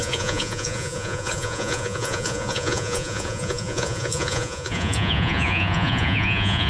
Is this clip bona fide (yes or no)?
no